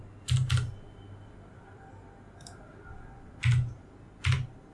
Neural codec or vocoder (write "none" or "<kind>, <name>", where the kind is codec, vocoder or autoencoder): none